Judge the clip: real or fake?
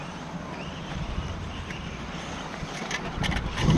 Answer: fake